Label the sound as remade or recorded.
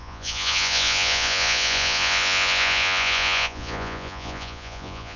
remade